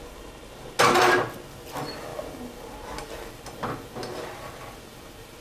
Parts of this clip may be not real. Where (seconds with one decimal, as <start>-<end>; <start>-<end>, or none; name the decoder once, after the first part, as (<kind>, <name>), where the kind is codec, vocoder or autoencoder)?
none